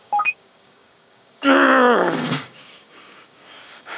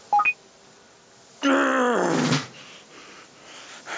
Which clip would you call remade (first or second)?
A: first